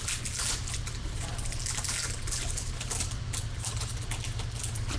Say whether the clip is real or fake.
real